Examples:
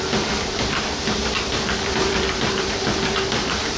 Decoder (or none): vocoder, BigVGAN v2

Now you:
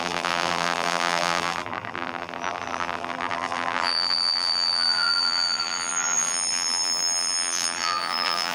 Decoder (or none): vocoder, BigVGAN v2